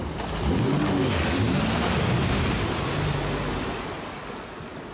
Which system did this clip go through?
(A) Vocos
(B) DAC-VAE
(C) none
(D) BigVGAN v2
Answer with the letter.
C